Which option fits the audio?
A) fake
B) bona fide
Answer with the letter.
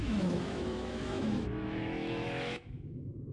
A